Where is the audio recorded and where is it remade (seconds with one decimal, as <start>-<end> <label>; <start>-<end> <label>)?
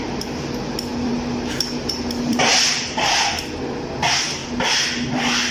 0.0-2.5 remade; 2.5-3.9 recorded; 3.9-4.4 remade; 4.4-5.1 recorded; 5.1-5.5 remade